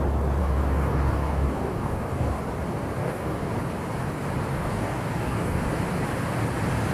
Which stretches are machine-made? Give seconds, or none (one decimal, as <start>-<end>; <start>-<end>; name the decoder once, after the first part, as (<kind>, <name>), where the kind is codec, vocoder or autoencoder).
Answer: 0.4-2.4 (codec, DAC); 3.0-3.5; 4.5-5.6